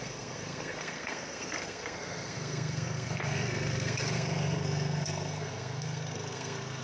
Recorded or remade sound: remade